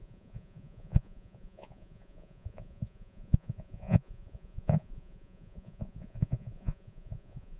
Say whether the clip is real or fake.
fake